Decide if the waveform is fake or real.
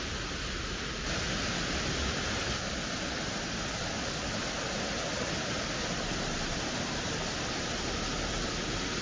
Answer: real